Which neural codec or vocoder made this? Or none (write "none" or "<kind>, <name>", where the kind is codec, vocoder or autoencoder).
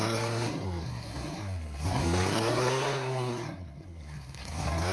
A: codec, SNAC